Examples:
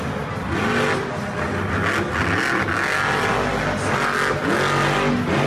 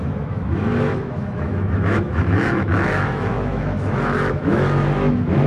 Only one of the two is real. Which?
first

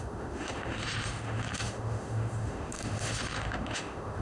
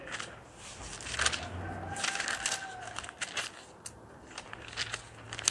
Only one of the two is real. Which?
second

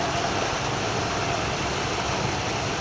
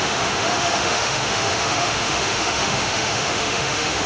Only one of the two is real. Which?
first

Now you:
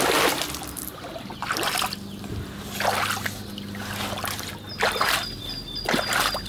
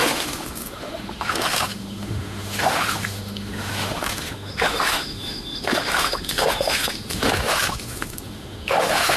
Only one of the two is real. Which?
first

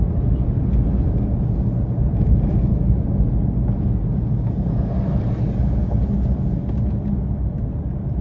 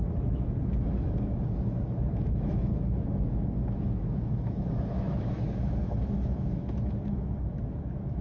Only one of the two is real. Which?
first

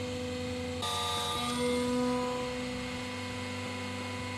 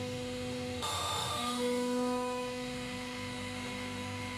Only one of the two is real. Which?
first